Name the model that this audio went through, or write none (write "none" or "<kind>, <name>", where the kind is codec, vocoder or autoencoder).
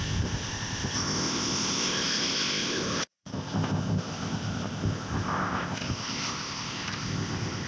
codec, ZipCodec